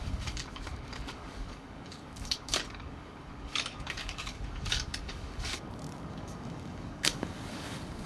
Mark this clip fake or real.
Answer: fake